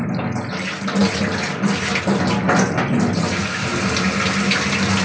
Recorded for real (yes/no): yes